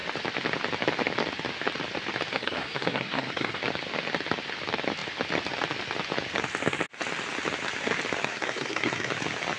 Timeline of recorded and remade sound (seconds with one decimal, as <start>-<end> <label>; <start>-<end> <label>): 0.0-2.3 recorded; 2.3-3.6 remade; 3.6-8.2 recorded; 8.2-9.1 remade; 9.1-9.6 recorded